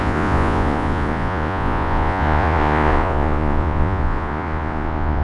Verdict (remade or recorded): remade